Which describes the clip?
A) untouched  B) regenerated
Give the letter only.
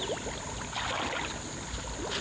A